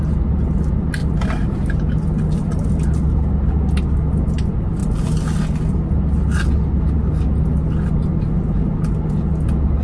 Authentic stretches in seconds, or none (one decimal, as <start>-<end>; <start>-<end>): 0.0-9.8